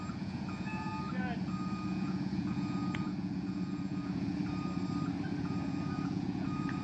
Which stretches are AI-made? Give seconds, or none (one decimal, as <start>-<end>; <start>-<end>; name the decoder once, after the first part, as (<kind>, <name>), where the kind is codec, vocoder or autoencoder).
0.0-0.9 (vocoder, Vocos); 1.4-4.4; 5.4-6.8